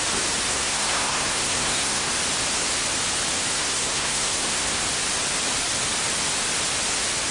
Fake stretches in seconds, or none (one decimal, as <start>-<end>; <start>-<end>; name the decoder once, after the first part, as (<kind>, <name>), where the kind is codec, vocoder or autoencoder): 0.5-2.1 (codec, SNAC); 3.5-4.8